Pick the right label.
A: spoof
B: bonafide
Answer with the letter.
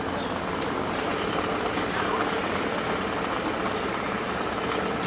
B